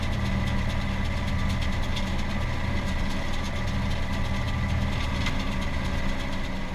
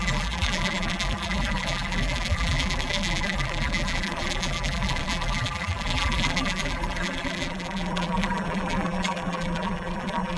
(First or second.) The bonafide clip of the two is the first